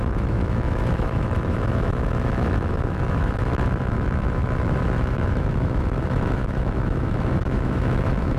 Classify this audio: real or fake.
fake